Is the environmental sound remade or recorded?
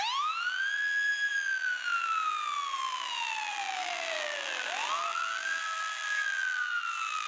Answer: remade